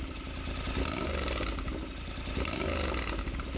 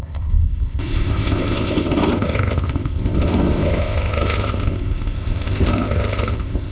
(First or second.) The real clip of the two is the first